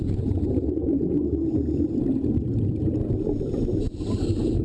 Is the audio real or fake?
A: real